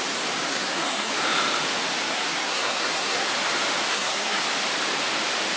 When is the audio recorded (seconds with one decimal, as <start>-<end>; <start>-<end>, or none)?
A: 0.0-0.5; 1.1-2.0; 3.3-3.9; 4.4-5.6